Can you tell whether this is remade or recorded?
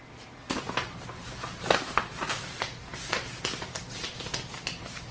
recorded